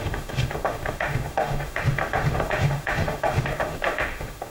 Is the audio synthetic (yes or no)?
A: yes